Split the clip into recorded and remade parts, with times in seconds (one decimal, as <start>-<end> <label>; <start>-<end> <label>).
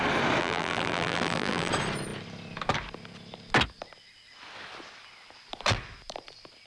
0.0-0.4 recorded; 0.4-1.7 remade; 1.7-6.7 recorded